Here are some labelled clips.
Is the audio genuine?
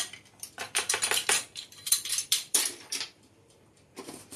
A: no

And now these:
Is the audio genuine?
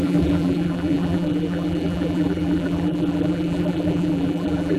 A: no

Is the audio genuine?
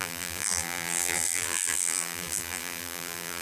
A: no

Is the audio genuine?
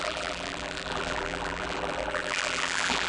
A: no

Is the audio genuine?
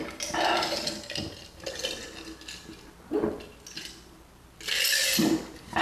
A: yes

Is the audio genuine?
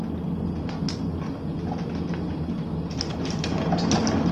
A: yes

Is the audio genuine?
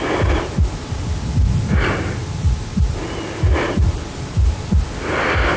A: yes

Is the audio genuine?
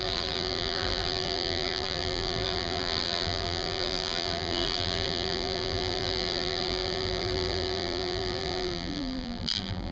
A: no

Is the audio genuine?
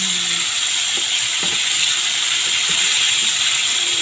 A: yes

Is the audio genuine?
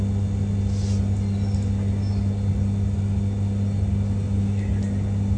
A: yes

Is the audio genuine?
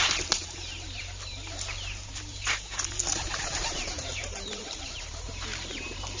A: no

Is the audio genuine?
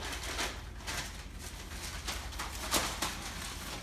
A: yes